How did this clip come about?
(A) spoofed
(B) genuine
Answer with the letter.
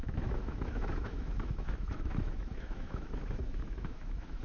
A